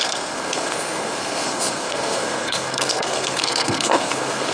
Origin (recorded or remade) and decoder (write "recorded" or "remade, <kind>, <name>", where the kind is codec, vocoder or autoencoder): remade, codec, SNAC